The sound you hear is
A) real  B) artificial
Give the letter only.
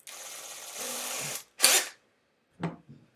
A